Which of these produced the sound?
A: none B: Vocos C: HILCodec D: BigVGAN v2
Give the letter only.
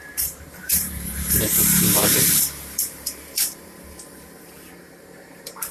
D